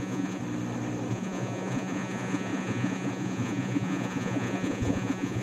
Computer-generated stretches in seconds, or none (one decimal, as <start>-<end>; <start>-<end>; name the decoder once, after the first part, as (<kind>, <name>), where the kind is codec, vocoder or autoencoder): 0.0-0.4 (vocoder, Vocos); 1.1-5.4